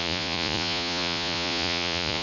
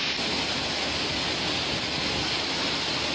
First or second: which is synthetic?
first